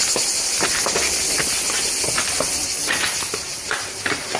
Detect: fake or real real